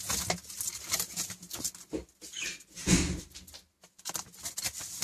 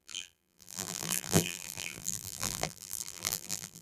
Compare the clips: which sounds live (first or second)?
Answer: first